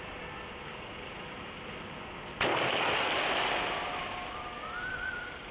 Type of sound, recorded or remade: recorded